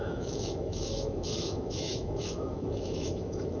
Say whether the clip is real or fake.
fake